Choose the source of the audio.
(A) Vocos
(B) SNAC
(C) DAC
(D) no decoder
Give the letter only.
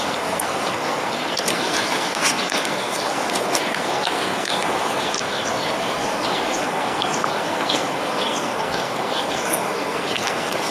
B